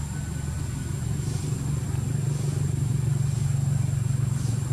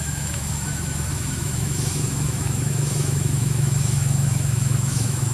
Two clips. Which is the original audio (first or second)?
first